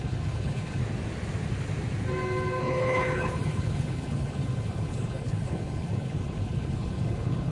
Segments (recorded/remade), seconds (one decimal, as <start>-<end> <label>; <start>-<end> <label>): 0.0-0.8 remade; 0.8-2.6 recorded; 2.6-7.5 remade